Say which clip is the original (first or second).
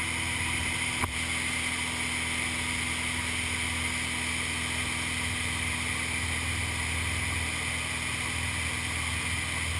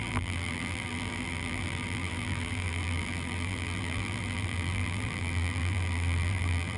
first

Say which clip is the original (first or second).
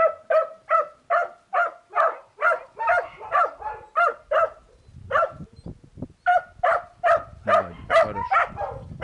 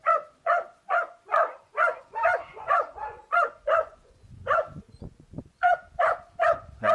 first